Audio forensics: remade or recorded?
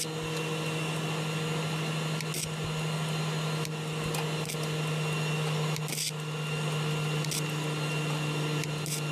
recorded